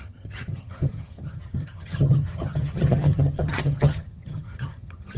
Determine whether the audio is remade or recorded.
remade